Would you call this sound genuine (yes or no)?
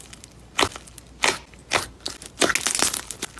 yes